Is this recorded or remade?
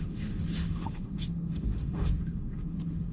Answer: remade